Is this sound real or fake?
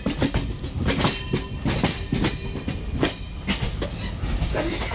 real